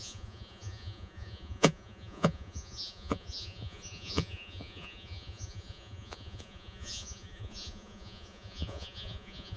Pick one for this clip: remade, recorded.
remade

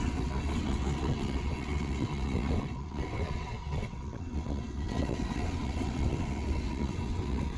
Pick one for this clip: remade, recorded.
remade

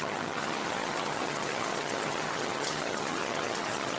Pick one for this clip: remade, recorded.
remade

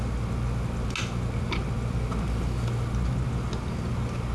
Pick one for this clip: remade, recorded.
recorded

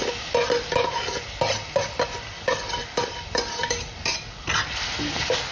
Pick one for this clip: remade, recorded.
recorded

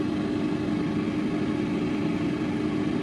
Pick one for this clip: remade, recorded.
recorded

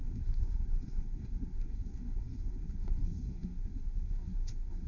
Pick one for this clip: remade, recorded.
remade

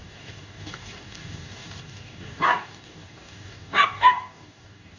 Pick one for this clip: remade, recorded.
remade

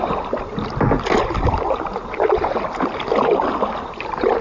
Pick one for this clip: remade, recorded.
recorded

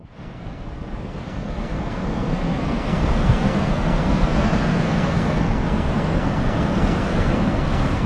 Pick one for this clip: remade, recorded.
remade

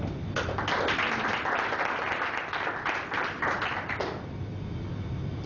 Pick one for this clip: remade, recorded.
recorded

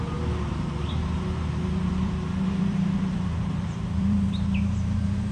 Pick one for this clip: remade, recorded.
remade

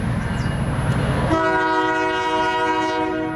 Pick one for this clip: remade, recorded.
recorded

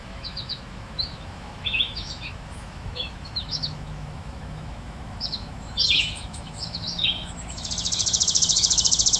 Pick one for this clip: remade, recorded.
remade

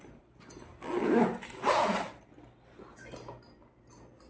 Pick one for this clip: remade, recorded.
recorded